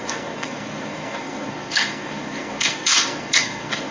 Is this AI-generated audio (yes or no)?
yes